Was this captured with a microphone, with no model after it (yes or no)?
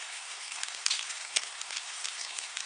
no